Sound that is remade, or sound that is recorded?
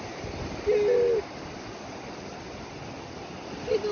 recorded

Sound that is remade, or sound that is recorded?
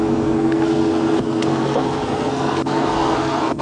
remade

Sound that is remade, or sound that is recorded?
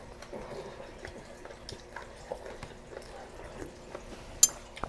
recorded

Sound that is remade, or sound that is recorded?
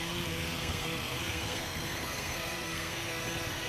remade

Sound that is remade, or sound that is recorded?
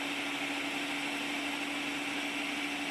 recorded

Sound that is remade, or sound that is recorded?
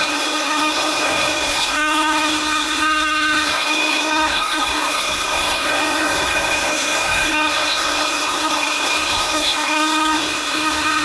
remade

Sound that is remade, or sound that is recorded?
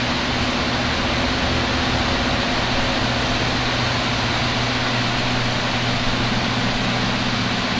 recorded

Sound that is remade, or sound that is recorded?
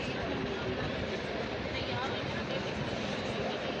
recorded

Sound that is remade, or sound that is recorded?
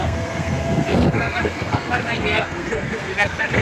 remade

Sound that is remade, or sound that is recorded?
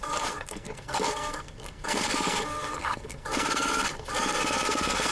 remade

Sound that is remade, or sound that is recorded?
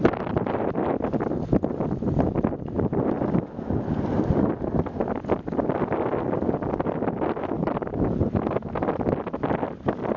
recorded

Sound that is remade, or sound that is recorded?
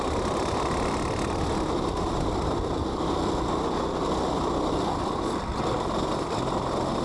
recorded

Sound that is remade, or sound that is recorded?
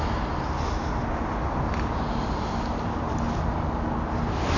recorded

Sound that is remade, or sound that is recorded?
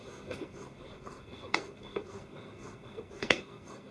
remade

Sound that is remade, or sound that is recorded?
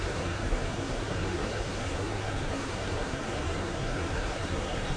remade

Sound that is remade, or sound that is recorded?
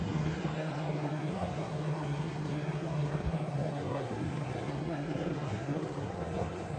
remade